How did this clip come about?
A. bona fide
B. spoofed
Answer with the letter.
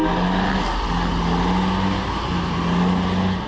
A